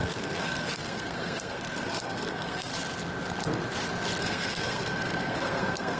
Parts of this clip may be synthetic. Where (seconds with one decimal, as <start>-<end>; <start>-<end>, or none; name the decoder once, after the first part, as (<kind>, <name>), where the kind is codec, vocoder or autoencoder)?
0.0-2.7 (codec, SNAC); 4.2-6.0